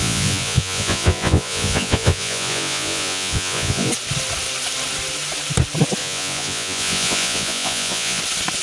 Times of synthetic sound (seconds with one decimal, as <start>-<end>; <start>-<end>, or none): 0.0-3.9; 6.0-8.2